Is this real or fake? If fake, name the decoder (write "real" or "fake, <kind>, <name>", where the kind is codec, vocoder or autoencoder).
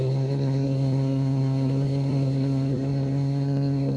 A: fake, codec, SNAC